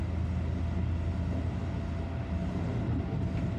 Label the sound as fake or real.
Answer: real